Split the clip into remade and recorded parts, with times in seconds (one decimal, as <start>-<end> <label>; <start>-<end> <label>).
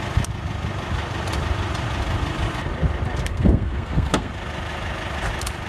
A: 0.0-3.3 recorded; 3.3-4.3 remade; 4.3-5.7 recorded